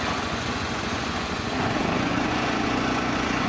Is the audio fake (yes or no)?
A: yes